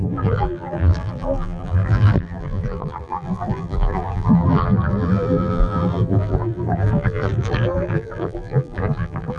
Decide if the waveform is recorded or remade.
remade